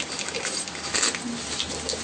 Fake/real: real